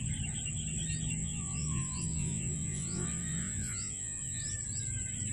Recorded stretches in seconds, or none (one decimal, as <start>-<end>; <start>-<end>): 0.0-1.2; 4.4-5.3